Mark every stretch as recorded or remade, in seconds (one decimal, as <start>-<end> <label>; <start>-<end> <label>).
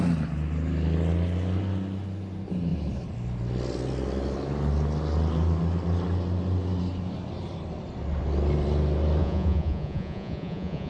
0.0-9.2 recorded; 9.2-10.9 remade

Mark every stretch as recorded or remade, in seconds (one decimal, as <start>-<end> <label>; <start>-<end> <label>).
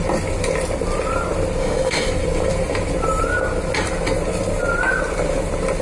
0.0-1.6 recorded; 1.6-2.1 remade; 2.1-5.8 recorded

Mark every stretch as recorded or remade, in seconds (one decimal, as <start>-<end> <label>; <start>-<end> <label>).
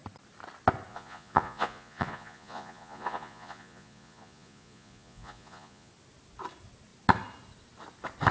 0.0-0.9 recorded; 0.9-5.9 remade; 5.9-8.3 recorded